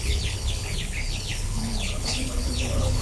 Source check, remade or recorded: remade